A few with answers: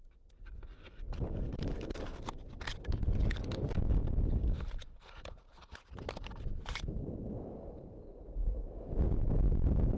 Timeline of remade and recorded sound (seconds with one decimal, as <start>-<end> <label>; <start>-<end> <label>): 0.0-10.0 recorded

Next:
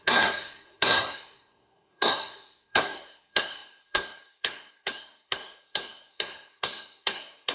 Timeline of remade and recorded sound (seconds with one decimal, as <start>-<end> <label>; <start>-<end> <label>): 0.0-7.5 remade

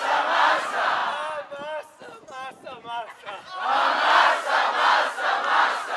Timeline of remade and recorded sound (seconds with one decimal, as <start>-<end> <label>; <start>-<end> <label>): 0.0-6.0 recorded

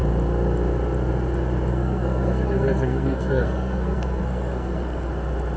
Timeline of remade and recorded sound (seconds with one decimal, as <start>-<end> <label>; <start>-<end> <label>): 0.0-1.7 recorded; 1.7-5.1 remade; 5.1-5.6 recorded